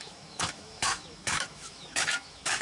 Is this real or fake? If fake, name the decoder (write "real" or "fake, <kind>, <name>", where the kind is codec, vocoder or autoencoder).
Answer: fake, autoencoder, DAC-VAE